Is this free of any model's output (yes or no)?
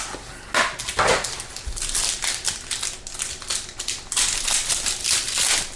yes